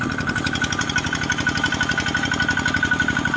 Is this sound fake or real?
real